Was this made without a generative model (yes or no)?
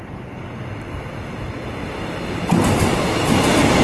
yes